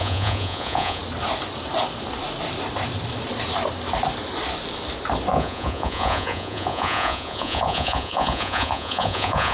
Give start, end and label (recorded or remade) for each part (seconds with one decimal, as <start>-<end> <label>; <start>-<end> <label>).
0.0-1.0 remade; 1.0-5.3 recorded; 5.3-9.5 remade